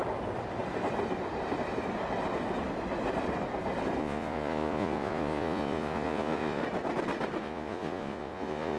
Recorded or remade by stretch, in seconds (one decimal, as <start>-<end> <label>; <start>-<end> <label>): 0.0-4.0 recorded; 4.0-6.6 remade; 6.6-7.4 recorded; 7.4-8.8 remade